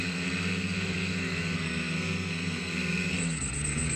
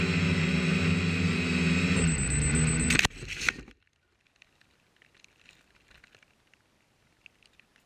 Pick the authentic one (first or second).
second